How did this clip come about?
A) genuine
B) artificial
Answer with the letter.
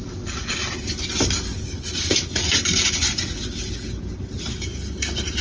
A